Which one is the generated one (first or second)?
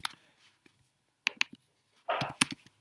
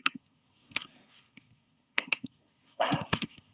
second